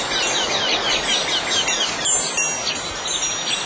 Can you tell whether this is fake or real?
real